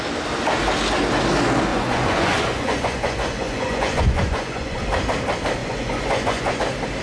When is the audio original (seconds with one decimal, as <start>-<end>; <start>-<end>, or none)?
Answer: 0.0-1.7; 4.8-5.6; 6.6-7.0